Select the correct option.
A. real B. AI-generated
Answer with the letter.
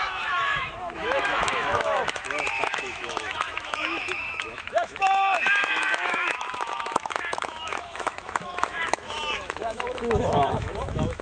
B